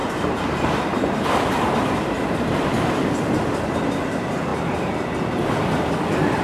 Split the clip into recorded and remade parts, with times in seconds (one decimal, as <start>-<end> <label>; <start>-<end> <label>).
0.0-3.8 remade; 3.8-6.4 recorded